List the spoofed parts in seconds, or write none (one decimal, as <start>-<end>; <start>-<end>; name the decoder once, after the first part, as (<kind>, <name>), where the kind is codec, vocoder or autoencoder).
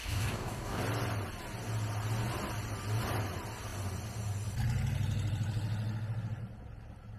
0.0-0.8 (codec, DAC)